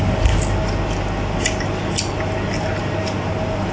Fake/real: real